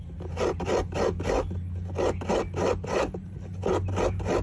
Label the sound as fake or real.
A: real